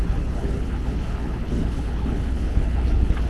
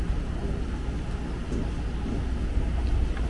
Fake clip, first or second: first